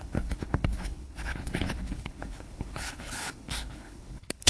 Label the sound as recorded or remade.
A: remade